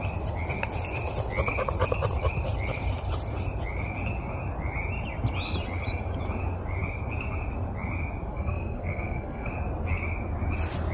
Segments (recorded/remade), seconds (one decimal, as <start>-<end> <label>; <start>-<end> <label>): 0.0-8.3 recorded; 8.3-9.5 remade; 9.5-10.9 recorded

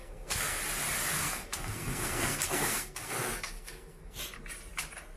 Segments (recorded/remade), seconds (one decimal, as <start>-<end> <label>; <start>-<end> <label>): 0.0-0.6 remade; 0.6-1.1 recorded; 1.1-4.2 remade; 4.2-5.2 recorded